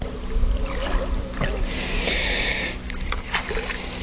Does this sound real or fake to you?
real